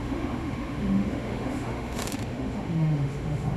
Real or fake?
fake